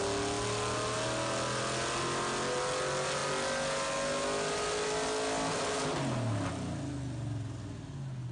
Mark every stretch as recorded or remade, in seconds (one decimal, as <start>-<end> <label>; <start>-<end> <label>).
0.0-8.3 recorded